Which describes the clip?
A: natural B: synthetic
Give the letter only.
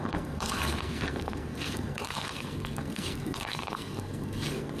B